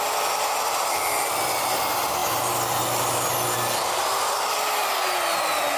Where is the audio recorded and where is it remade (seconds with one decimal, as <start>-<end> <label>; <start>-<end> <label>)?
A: 0.0-5.8 recorded